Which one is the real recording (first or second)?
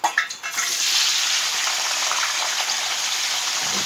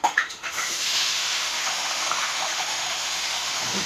first